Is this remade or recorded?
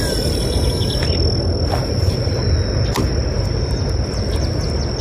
recorded